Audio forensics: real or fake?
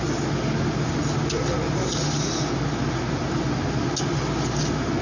real